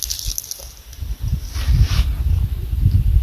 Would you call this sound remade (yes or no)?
no